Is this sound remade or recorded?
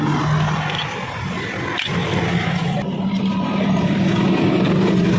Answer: recorded